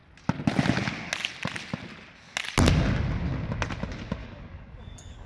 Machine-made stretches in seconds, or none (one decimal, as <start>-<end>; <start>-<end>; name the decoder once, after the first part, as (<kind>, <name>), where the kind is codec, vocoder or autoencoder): 4.2-5.3 (codec, DAC)